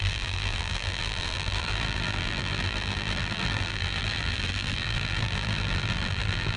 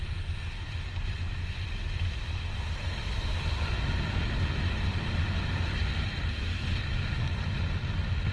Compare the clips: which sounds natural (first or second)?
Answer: second